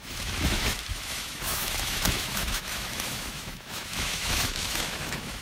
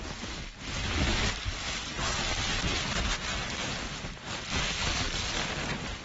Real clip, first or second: second